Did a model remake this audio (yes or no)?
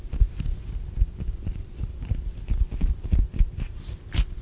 no